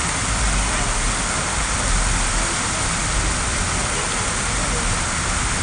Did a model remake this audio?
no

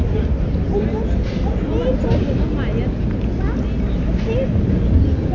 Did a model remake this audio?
no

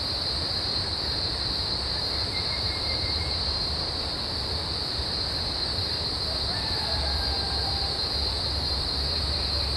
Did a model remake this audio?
yes